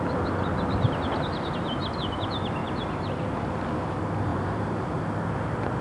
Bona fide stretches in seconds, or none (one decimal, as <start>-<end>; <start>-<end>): 0.0-2.6; 3.5-4.3; 5.1-5.8